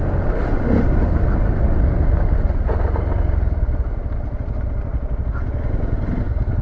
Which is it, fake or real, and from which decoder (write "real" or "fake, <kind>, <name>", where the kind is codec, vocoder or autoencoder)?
real